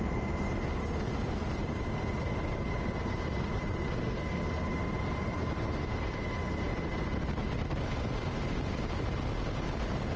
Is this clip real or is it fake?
real